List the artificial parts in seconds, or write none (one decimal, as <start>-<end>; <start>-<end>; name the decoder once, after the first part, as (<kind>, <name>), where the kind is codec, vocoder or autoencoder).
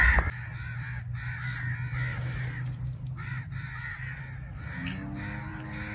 none